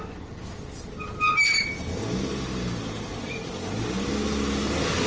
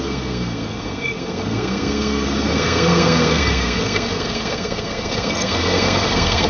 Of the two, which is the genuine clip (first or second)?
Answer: first